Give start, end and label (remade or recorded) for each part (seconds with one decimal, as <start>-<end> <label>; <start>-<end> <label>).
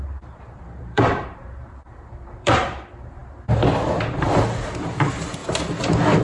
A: 0.0-3.2 remade; 3.2-4.1 recorded; 4.1-5.4 remade; 5.4-6.2 recorded